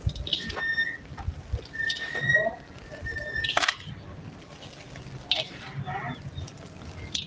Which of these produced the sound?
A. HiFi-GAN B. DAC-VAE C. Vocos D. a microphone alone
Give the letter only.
D